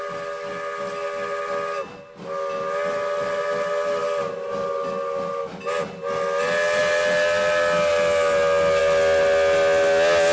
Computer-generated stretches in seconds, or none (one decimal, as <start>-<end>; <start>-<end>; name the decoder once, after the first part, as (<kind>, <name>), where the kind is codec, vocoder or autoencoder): none